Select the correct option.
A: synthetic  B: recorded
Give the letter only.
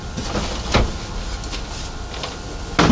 B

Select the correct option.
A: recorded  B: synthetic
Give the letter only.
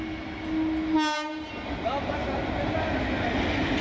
A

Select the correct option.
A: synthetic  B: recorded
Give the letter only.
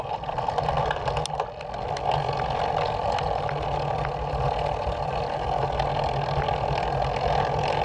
B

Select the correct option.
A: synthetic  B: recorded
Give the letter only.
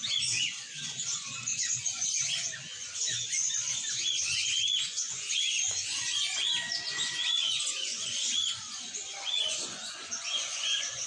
A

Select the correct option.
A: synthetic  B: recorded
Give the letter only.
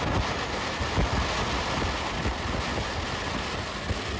B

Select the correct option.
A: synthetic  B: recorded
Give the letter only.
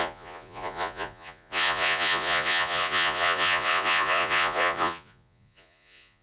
A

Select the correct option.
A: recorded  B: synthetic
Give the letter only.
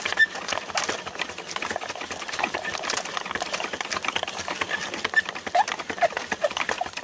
A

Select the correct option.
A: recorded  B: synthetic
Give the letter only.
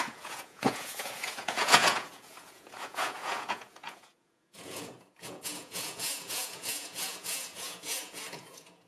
B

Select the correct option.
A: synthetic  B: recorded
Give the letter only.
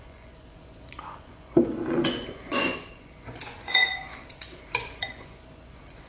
A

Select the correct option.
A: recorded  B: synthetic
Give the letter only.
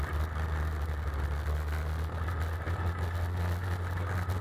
A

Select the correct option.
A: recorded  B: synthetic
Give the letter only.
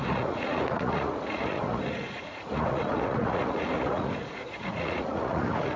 B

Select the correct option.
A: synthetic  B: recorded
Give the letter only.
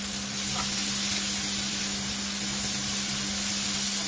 B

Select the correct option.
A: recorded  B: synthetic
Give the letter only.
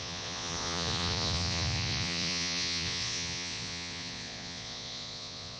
B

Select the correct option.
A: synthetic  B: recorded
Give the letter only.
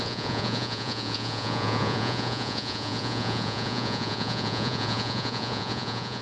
A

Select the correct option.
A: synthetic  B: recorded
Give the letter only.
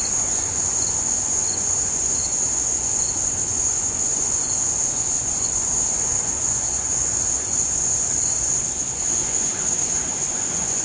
A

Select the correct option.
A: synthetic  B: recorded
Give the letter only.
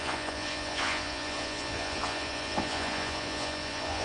A